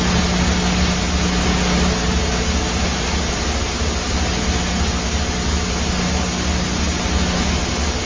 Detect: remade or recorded recorded